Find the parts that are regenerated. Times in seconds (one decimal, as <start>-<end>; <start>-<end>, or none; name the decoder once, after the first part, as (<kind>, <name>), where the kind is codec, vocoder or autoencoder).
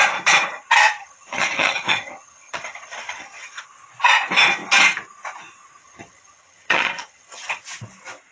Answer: 1.0-3.6 (vocoder, HiFi-GAN); 5.8-7.6